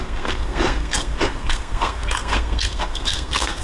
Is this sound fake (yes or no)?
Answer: yes